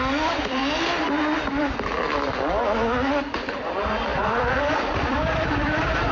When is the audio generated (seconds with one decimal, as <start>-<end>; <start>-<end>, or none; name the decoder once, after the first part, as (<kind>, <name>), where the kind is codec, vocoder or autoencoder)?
0.0-0.6 (vocoder, BigVGAN v2); 3.6-6.1